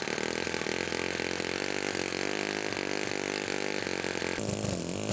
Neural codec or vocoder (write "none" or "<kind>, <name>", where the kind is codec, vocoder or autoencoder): none